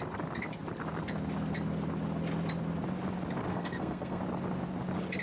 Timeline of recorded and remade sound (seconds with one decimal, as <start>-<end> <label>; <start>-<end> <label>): 0.0-3.5 recorded; 3.5-4.2 remade; 4.2-5.2 recorded